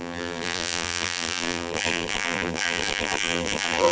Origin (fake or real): fake